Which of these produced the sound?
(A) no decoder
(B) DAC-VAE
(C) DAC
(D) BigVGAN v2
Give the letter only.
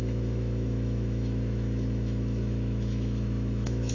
B